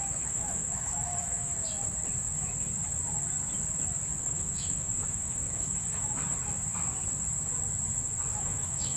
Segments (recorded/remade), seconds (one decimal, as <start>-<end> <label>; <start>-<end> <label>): 0.0-1.5 remade; 1.5-4.2 recorded; 4.2-6.2 remade; 6.2-8.4 recorded; 8.4-9.0 remade